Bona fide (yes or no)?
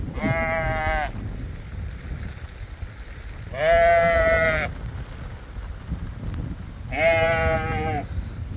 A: yes